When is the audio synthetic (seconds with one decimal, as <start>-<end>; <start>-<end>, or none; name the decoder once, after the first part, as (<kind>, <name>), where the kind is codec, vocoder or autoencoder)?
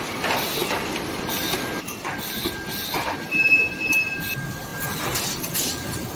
none